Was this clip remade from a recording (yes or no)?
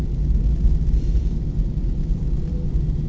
no